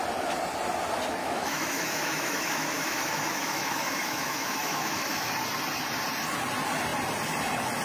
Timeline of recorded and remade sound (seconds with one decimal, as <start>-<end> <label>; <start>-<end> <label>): 0.0-1.2 recorded; 1.2-5.3 remade; 5.3-7.8 recorded